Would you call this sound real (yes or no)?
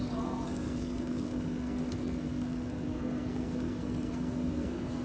no